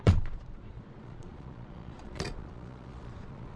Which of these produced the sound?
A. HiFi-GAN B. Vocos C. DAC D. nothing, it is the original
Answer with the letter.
B